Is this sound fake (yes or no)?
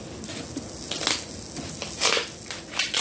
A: no